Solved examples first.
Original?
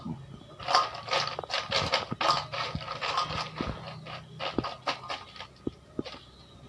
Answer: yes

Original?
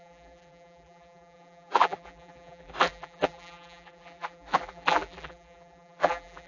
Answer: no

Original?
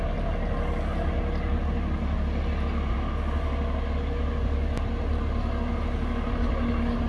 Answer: yes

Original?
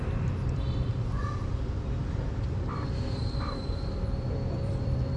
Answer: no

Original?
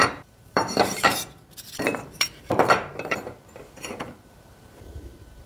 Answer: no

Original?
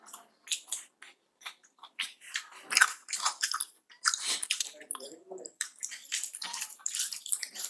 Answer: no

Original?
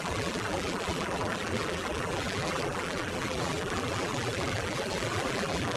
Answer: no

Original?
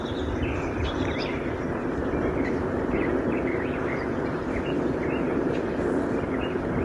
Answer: no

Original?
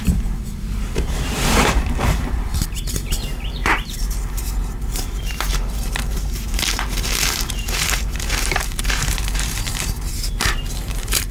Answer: no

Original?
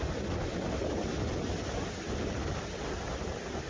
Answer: yes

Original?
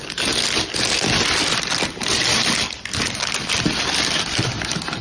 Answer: yes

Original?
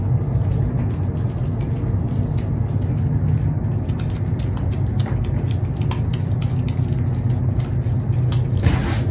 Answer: yes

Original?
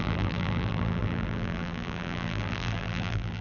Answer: no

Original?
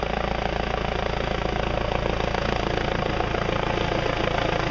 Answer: yes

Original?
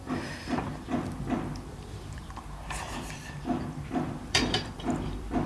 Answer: no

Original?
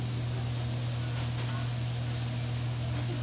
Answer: yes